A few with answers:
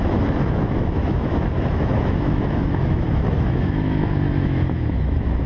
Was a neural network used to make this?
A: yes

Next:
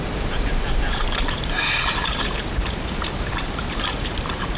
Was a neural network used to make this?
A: yes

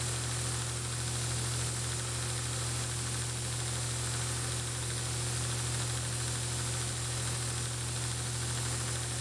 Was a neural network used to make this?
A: no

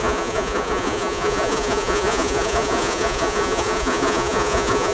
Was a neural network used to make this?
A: yes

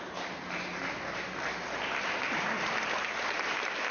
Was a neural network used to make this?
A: no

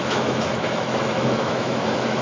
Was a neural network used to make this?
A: yes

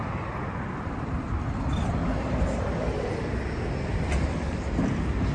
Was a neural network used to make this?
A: no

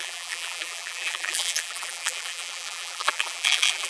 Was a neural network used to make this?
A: yes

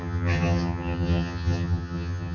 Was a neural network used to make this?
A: yes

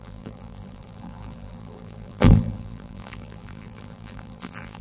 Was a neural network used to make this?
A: yes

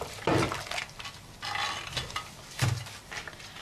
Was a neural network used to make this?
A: no